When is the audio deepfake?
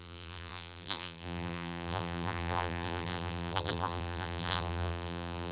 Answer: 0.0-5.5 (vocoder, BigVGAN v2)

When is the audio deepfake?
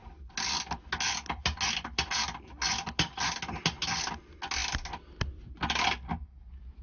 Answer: none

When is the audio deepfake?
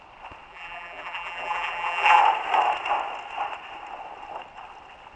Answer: 0.5-2.2 (vocoder, BigVGAN v2)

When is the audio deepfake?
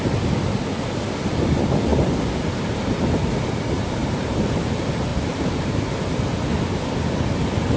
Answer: 4.0-4.6 (vocoder, BigVGAN v2); 5.1-6.1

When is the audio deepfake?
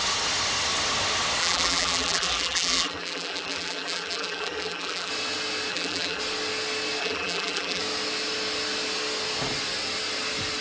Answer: 1.4-5.1 (vocoder, BigVGAN v2); 5.7-6.2; 7.0-7.8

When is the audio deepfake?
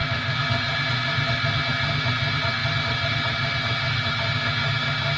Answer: none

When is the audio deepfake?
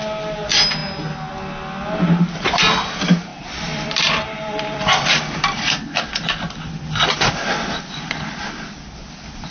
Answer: 3.3-7.5 (vocoder, BigVGAN v2)